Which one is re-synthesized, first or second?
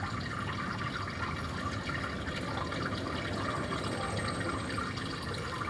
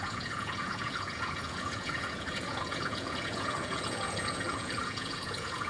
second